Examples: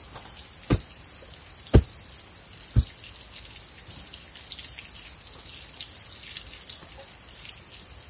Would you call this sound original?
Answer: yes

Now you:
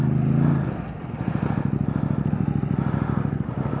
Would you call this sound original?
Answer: yes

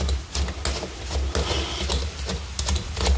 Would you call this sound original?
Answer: yes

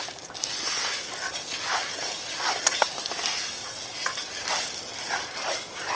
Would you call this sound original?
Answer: yes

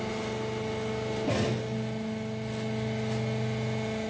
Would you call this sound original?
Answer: yes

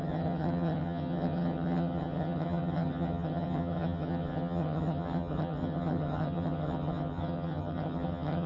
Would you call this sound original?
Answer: no